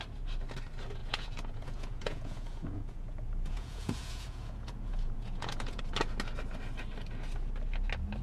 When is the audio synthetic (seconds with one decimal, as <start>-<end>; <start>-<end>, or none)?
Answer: 1.0-5.8